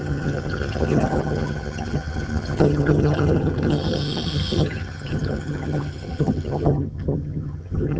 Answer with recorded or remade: remade